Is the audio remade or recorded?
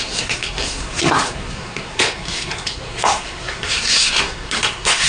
remade